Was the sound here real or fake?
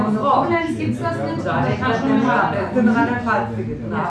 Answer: real